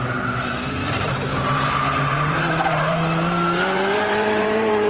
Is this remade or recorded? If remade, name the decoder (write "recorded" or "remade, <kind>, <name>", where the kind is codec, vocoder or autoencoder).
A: remade, vocoder, BigVGAN v2